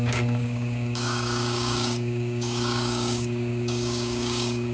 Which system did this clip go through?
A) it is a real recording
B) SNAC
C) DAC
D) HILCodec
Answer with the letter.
C